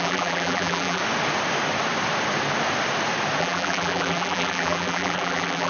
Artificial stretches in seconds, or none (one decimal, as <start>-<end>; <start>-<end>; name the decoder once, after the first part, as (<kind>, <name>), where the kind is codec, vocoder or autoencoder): 0.0-1.0 (vocoder, BigVGAN v2); 3.4-5.7